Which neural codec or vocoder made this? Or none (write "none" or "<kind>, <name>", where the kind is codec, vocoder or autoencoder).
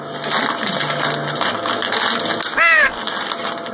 none